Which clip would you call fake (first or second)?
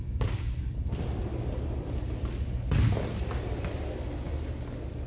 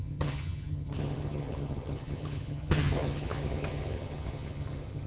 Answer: second